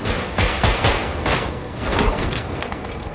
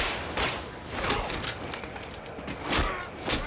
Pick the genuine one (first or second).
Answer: second